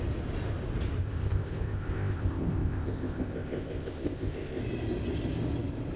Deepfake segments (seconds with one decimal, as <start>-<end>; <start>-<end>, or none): 1.0-4.6